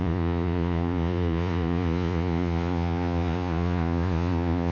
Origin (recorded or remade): remade